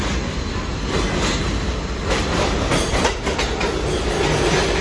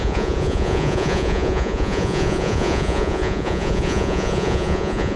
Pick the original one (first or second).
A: first